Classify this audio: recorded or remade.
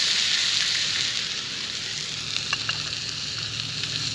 recorded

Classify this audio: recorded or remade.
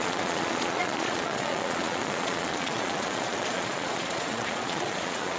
remade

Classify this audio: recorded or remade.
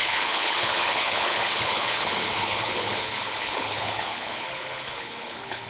remade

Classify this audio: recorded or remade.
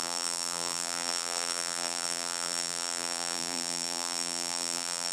remade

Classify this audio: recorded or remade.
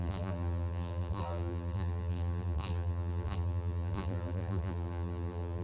remade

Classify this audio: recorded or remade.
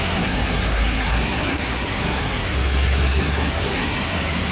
remade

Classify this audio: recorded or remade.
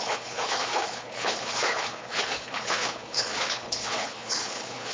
remade